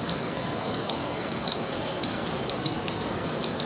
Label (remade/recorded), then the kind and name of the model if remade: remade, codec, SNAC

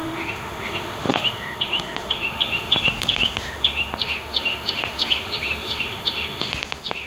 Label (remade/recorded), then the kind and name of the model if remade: remade, autoencoder, DAC-VAE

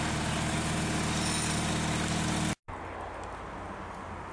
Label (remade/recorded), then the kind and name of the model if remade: recorded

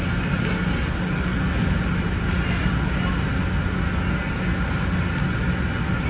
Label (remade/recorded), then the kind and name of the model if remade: recorded